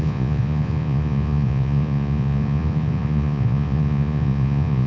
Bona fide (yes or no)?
no